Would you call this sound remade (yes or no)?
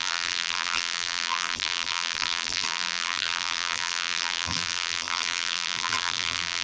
yes